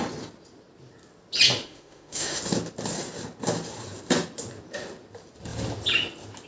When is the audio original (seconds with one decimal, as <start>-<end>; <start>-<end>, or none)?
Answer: 0.0-1.6; 2.4-6.5